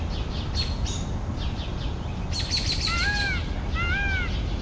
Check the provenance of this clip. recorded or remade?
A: recorded